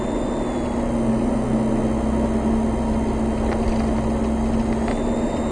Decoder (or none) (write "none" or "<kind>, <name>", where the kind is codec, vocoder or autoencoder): none